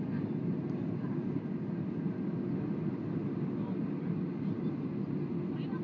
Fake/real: real